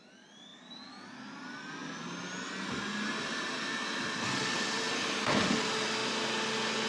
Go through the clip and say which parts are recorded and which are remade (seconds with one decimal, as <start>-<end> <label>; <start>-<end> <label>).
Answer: 0.0-0.5 recorded; 0.5-1.1 remade; 1.1-6.9 recorded